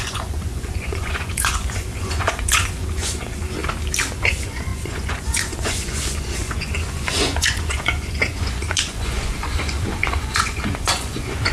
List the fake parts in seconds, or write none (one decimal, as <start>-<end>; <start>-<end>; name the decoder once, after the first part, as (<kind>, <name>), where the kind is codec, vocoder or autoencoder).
0.0-3.6 (vocoder, Vocos); 4.2-11.5